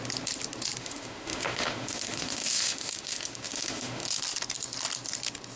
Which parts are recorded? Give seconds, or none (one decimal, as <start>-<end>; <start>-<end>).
0.0-0.8; 4.2-5.6